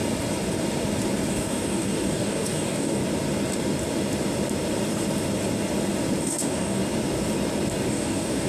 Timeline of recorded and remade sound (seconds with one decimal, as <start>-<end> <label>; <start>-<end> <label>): 0.0-1.3 recorded; 1.3-3.0 remade; 3.0-6.2 recorded; 6.2-6.8 remade; 6.8-7.9 recorded; 7.9-8.5 remade